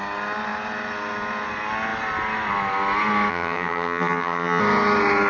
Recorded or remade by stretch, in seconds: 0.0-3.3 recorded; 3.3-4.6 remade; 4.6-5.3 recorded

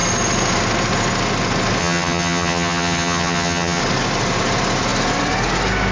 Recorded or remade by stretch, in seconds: 0.0-1.8 recorded; 1.8-3.8 remade; 3.8-5.9 recorded